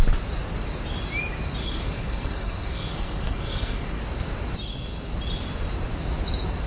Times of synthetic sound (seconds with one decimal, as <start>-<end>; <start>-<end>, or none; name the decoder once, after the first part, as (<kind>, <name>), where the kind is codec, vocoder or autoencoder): 1.6-4.0 (codec, SNAC)